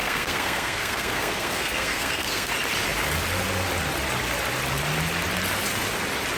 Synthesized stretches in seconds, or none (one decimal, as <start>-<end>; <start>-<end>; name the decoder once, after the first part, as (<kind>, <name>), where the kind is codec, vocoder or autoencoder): 0.0-2.5 (codec, SNAC)